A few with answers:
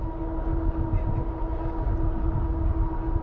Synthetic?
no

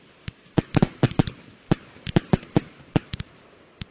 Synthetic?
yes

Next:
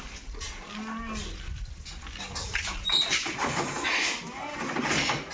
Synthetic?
no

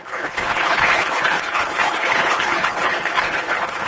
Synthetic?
yes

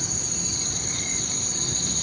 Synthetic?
no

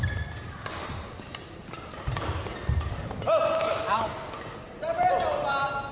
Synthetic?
no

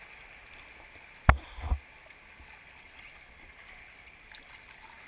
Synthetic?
no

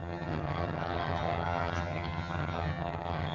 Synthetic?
yes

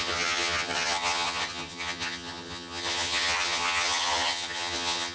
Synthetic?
yes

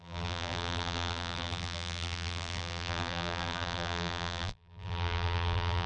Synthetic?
yes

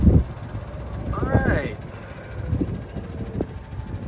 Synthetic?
no